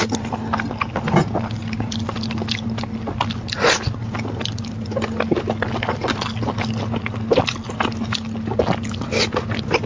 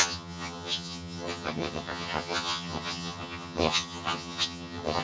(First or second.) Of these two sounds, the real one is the first